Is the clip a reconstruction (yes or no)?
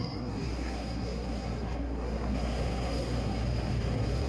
yes